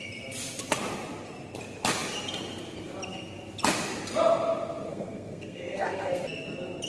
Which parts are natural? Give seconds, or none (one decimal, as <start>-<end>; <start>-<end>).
0.0-4.9; 6.2-6.9